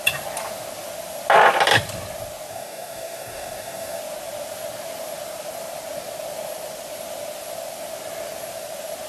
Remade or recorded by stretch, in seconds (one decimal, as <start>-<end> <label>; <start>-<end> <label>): 0.0-2.5 recorded; 2.5-4.0 remade; 4.0-9.1 recorded